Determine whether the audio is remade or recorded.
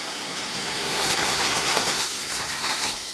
remade